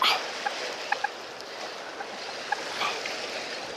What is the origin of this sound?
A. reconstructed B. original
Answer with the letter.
B